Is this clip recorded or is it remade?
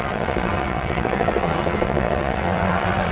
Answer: remade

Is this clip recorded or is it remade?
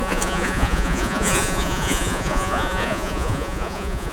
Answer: remade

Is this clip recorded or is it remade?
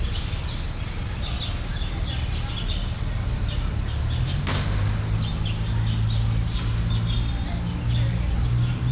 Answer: recorded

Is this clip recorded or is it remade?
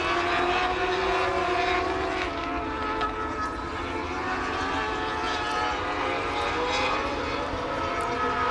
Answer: recorded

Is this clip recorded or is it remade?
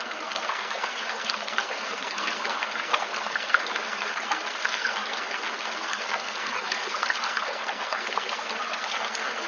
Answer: remade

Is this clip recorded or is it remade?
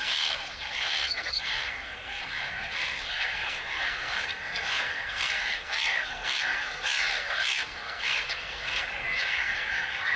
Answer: remade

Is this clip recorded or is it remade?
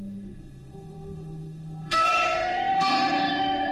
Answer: remade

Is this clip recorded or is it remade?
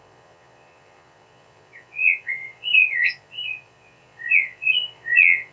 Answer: remade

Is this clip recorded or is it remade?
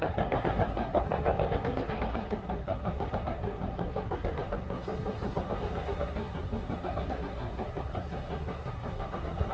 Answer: remade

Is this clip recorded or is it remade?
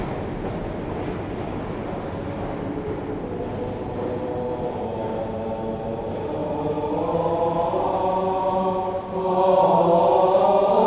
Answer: recorded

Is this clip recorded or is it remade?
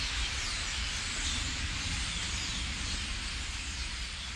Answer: recorded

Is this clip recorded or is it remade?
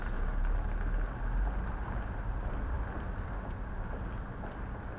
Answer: recorded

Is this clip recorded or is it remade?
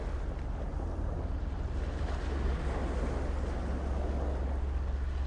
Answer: recorded